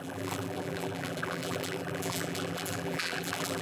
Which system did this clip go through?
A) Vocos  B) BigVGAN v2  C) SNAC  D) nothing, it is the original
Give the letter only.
B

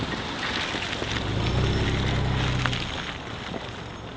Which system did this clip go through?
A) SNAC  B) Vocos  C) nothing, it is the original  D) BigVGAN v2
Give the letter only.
C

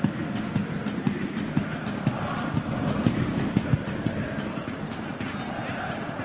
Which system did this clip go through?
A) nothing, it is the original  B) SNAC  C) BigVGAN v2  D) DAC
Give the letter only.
A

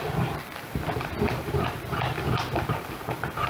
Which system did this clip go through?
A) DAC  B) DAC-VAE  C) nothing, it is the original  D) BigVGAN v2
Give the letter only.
D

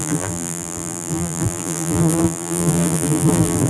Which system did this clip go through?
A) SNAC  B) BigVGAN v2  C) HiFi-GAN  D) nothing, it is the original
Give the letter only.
B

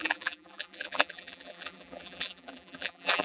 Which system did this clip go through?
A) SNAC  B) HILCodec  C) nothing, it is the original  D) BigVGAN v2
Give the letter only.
D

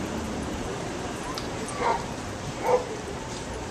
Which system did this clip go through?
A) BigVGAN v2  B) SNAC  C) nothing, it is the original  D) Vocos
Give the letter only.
A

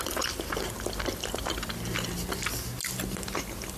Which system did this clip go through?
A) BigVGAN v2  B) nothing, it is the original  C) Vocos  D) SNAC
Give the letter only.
B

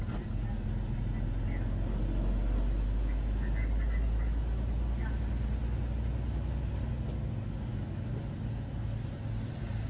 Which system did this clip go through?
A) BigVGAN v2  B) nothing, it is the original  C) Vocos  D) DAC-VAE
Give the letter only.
B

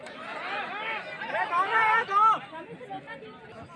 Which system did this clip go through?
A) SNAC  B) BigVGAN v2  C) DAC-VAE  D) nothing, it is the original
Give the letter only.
B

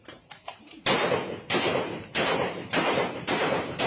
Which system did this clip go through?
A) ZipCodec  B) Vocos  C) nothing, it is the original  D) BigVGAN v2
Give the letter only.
C